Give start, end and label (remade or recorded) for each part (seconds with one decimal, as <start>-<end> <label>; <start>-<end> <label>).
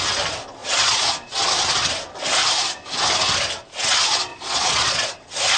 0.0-0.6 recorded; 0.6-1.1 remade; 1.1-4.3 recorded; 4.3-5.1 remade; 5.1-5.6 recorded